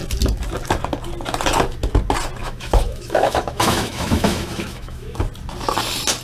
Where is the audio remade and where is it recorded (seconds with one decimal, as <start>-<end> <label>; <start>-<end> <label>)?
0.0-2.4 recorded; 2.4-5.2 remade; 5.2-6.2 recorded